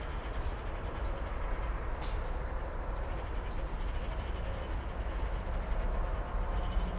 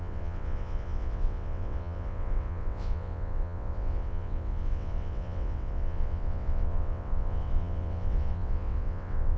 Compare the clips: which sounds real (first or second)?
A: first